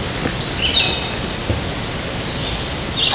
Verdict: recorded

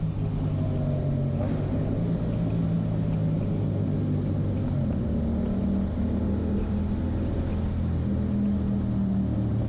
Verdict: recorded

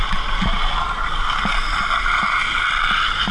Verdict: recorded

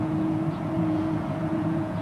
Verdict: remade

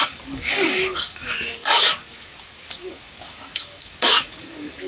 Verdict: remade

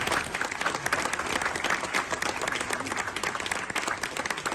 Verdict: recorded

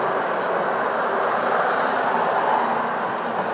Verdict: recorded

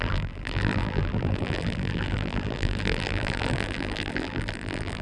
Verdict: remade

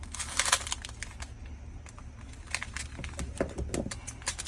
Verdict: recorded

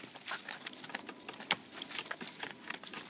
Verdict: recorded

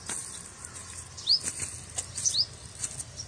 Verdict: recorded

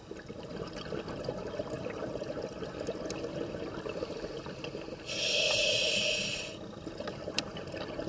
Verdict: recorded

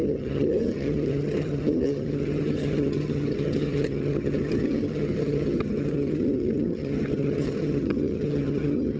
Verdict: remade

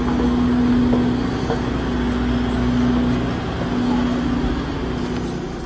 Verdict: recorded